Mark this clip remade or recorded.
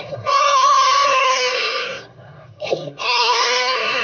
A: remade